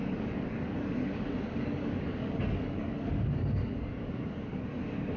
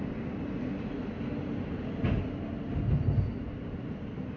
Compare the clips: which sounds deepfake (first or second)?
first